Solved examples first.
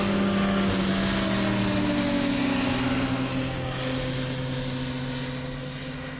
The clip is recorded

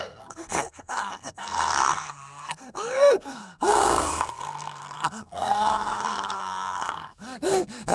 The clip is remade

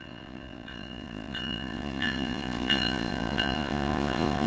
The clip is remade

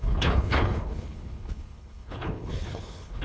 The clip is remade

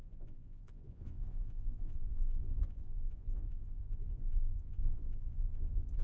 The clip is remade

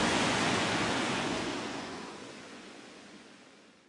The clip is remade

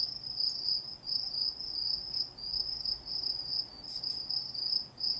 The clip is recorded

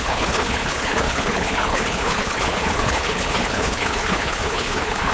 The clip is remade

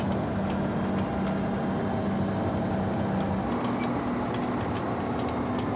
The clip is recorded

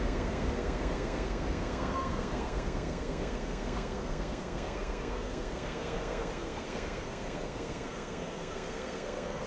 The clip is remade